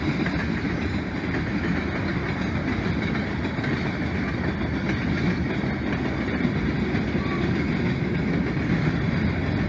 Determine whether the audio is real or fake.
real